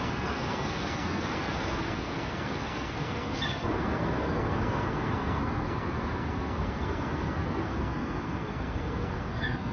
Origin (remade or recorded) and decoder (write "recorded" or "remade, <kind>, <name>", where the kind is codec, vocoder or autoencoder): remade, codec, SNAC